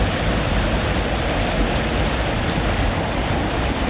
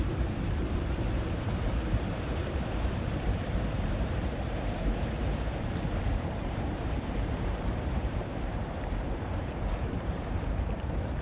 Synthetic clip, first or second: second